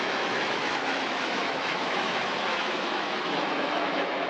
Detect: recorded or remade remade